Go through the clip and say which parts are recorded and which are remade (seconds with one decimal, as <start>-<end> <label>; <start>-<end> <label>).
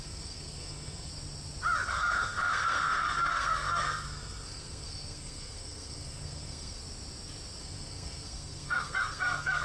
0.0-1.1 remade; 1.1-1.9 recorded; 1.9-6.8 remade; 6.8-7.6 recorded; 7.6-9.6 remade